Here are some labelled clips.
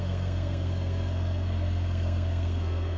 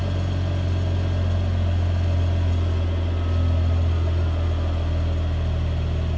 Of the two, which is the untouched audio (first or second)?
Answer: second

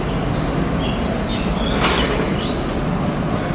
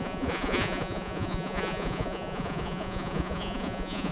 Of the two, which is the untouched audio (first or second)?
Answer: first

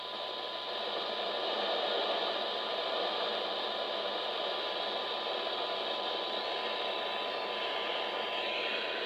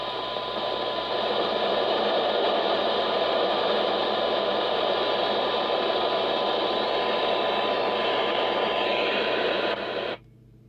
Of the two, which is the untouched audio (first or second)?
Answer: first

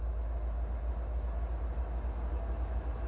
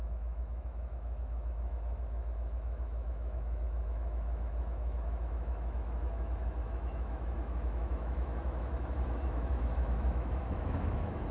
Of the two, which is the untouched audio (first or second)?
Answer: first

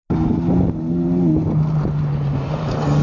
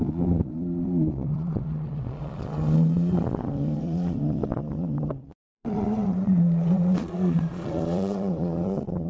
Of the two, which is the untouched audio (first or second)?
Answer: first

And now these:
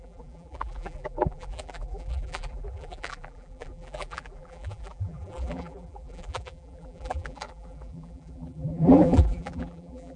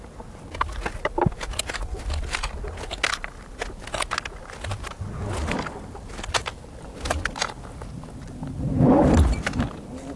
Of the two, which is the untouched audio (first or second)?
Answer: second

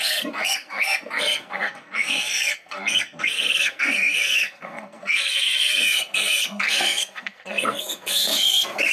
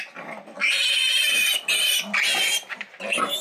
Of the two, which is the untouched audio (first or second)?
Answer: second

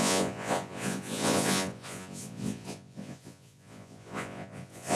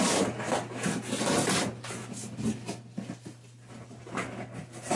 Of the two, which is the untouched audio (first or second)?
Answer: second